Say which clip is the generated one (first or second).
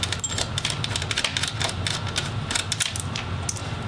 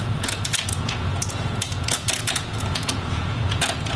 second